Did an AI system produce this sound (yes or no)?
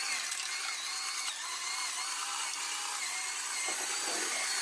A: no